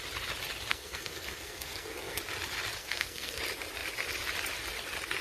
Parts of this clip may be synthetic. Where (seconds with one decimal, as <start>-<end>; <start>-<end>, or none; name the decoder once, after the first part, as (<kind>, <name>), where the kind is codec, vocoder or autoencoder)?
0.7-2.2 (codec, SNAC); 2.8-3.4

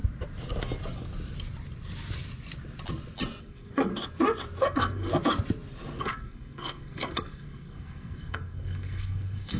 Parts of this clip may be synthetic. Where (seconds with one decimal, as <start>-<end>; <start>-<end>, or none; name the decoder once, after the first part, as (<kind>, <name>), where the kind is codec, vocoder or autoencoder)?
3.4-3.9 (codec, SNAC); 4.6-5.1; 6.0-9.6

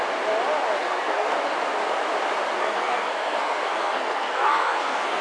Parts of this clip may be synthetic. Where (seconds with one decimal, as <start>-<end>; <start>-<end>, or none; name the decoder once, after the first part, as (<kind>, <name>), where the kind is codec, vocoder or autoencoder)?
0.8-1.3 (codec, SNAC); 2.6-5.2

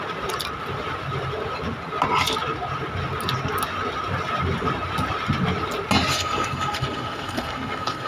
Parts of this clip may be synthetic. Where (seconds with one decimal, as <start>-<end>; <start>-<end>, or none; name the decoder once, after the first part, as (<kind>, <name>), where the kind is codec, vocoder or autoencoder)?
6.1-8.1 (codec, SNAC)